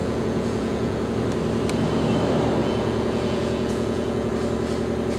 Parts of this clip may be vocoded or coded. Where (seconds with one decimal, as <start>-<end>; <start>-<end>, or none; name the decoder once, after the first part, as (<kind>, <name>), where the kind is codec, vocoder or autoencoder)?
0.0-1.1 (vocoder, Vocos); 2.6-4.3